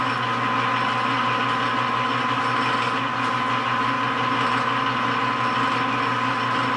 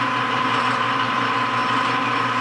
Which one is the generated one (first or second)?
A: second